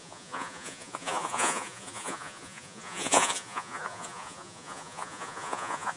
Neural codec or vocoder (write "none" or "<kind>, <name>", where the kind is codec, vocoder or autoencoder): vocoder, Vocos